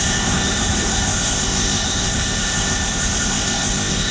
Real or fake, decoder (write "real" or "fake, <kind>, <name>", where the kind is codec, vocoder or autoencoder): fake, codec, ZipCodec